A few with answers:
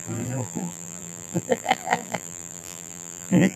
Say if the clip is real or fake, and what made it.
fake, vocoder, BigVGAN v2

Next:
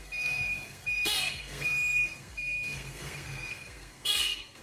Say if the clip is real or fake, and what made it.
fake, codec, SNAC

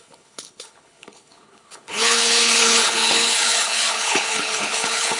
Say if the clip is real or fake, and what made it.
fake, codec, HILCodec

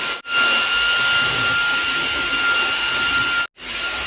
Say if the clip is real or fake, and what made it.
real